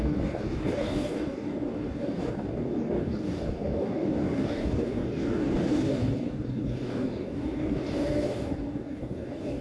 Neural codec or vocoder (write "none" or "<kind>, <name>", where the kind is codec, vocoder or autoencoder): codec, DAC